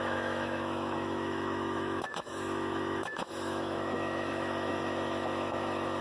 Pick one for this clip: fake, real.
fake